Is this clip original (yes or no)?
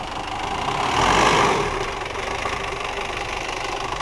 yes